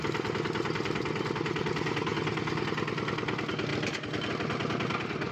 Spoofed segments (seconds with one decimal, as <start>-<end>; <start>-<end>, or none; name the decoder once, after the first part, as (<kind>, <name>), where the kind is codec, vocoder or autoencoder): none